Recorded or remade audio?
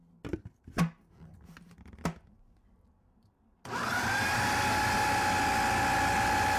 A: recorded